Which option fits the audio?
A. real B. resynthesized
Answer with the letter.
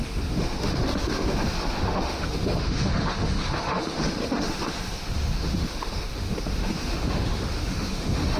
B